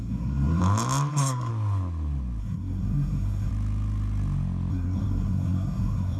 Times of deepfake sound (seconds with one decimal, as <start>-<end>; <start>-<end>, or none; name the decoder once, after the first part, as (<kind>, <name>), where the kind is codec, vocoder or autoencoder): 0.0-0.6 (codec, SNAC); 1.1-1.5; 2.4-3.5; 4.7-6.2